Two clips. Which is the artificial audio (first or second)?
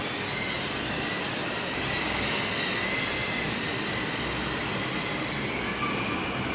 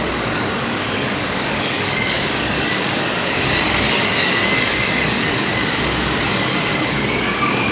second